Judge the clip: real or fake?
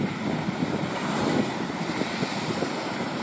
fake